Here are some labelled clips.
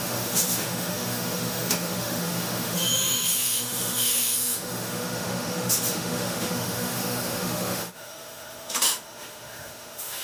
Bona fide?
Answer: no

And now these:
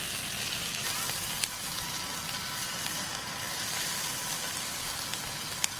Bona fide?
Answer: yes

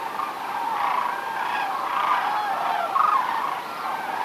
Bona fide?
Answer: yes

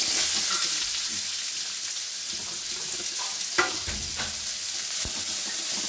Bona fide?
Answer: yes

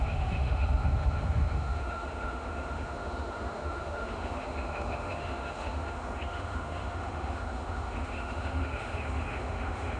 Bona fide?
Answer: no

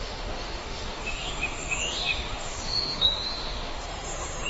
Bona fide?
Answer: no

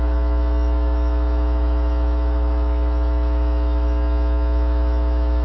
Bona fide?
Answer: no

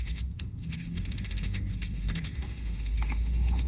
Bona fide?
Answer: no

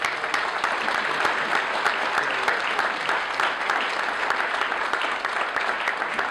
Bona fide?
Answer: yes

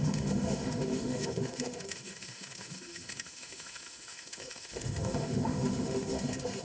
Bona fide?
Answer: no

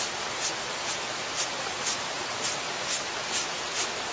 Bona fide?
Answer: yes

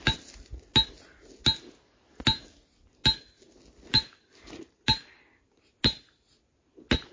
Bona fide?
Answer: yes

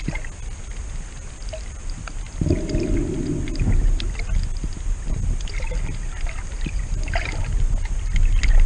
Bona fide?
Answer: yes